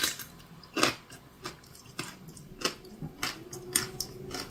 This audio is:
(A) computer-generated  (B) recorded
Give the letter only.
B